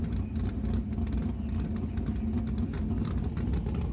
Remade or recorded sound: recorded